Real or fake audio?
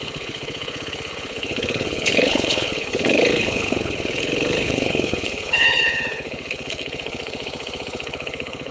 fake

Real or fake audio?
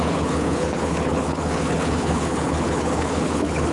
fake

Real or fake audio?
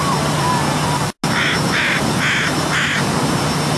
real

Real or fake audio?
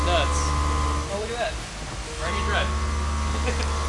real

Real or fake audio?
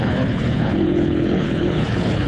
fake